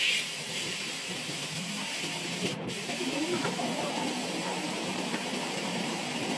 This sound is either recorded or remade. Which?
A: remade